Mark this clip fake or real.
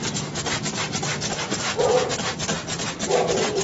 real